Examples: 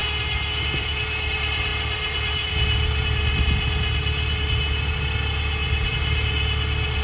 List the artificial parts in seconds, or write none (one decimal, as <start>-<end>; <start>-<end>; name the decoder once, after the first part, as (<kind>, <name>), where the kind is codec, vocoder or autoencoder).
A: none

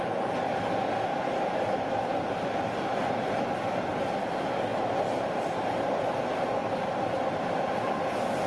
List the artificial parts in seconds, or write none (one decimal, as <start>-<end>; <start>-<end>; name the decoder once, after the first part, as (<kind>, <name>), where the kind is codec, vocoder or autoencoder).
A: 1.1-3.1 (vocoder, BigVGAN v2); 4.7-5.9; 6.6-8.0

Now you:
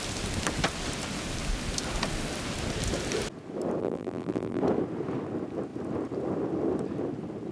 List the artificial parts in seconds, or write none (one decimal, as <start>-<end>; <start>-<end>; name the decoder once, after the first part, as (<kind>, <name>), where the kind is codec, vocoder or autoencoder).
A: 3.8-4.6 (vocoder, BigVGAN v2)